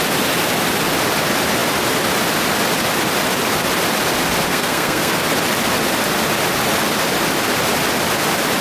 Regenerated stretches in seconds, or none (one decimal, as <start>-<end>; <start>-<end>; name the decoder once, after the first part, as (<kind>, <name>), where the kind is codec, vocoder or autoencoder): 4.5-5.1 (codec, SNAC)